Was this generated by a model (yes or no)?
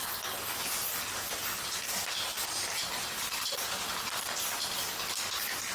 no